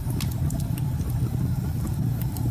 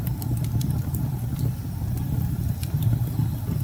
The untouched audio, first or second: first